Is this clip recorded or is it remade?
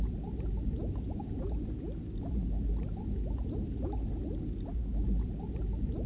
recorded